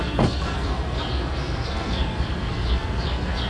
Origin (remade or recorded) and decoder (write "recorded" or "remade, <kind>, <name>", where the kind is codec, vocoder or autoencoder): remade, codec, SNAC